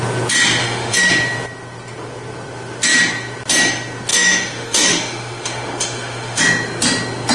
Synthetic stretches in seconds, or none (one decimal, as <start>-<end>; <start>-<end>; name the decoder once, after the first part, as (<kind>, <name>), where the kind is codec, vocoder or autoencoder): 0.6-1.1 (autoencoder, DAC-VAE); 4.1-6.4

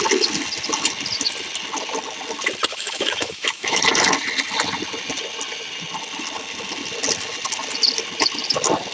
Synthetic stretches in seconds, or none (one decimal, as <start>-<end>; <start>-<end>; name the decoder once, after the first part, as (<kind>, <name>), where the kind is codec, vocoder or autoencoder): 2.7-3.8 (autoencoder, DAC-VAE)

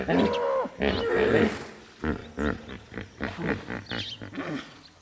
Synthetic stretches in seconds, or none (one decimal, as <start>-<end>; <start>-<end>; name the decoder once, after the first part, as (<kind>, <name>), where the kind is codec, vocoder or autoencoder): none

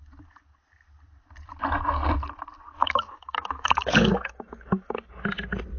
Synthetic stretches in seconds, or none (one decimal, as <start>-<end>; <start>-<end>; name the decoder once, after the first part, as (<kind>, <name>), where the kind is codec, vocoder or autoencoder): 2.8-5.1 (autoencoder, DAC-VAE)